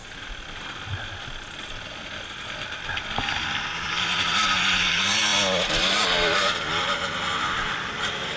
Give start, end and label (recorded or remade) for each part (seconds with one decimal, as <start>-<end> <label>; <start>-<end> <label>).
0.0-8.4 recorded